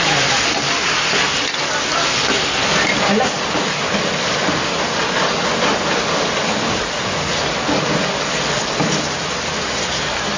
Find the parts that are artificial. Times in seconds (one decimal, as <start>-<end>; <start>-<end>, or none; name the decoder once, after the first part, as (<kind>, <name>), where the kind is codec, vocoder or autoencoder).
0.0-10.4 (vocoder, BigVGAN v2)